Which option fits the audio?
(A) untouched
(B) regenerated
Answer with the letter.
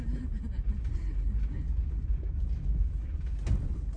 A